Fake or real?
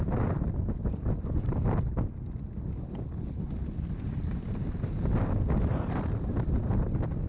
real